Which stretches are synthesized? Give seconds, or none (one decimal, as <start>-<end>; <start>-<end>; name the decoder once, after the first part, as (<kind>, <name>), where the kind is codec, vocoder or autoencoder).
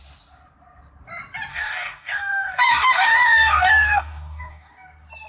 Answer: 1.5-4.7 (codec, DAC)